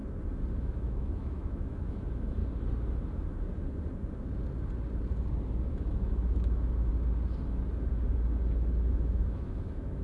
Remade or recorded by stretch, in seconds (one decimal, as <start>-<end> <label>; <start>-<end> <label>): 0.0-0.6 recorded; 0.6-2.4 remade; 2.4-5.6 recorded; 5.6-6.9 remade; 6.9-8.9 recorded; 8.9-10.0 remade